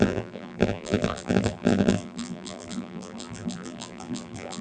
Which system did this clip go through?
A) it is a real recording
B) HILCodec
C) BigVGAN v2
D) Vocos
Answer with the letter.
C